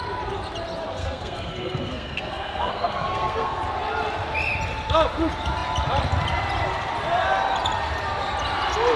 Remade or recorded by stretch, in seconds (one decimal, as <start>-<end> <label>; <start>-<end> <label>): 0.0-1.0 recorded; 1.0-3.6 remade; 3.6-9.0 recorded